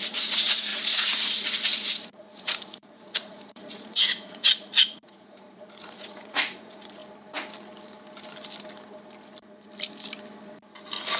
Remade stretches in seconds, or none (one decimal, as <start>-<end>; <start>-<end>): 0.0-7.0